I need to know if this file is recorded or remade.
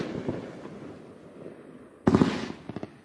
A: recorded